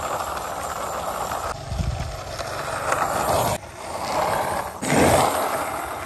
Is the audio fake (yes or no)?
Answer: no